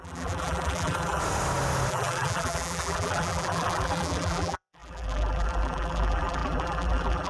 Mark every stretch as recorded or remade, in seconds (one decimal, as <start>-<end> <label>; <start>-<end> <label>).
0.0-1.2 remade; 1.2-1.9 recorded; 1.9-7.3 remade

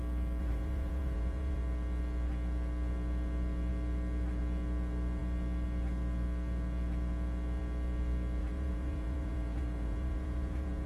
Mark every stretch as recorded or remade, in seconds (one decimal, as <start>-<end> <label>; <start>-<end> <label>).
0.0-0.4 recorded; 0.4-1.6 remade; 1.6-8.4 recorded; 8.4-10.9 remade